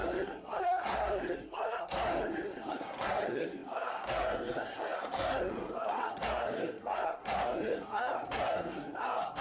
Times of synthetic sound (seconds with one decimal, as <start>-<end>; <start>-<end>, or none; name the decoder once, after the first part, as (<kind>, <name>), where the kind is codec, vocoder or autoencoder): 0.0-9.4 (codec, SNAC)